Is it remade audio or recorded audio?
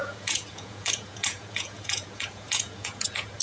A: remade